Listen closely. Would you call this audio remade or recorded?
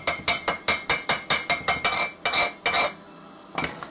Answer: recorded